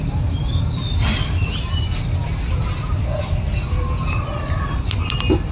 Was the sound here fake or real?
real